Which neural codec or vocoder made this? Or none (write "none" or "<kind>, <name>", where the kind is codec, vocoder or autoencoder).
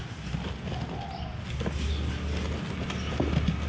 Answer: none